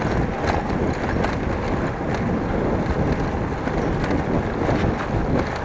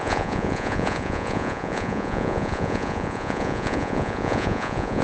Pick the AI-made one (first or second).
second